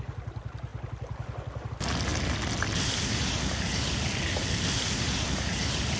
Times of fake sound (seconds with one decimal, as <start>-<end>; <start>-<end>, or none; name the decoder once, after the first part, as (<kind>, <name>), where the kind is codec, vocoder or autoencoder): none